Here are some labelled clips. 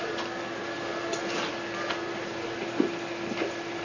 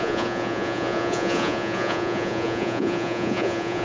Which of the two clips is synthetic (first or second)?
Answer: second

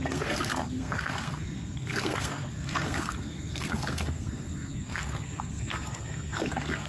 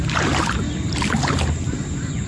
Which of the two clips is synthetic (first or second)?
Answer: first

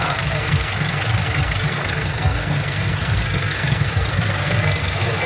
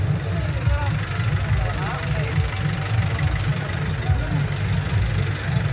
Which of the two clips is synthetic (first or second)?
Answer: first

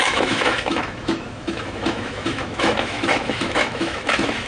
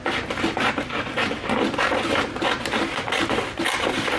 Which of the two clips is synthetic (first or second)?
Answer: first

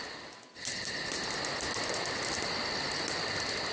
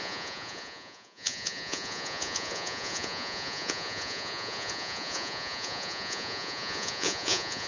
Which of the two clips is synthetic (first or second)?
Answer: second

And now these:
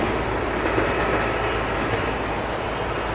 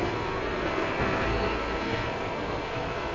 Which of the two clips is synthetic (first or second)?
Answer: second